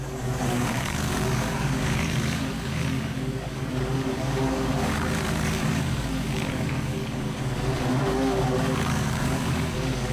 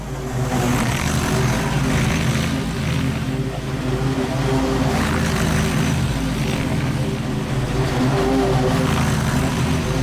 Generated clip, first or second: first